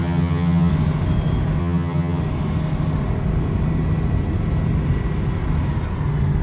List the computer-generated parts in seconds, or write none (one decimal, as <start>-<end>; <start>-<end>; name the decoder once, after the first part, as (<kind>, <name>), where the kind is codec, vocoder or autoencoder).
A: 0.0-0.7 (vocoder, HiFi-GAN); 1.6-2.2